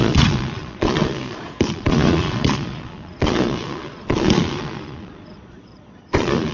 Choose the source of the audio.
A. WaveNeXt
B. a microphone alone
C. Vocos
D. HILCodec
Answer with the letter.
C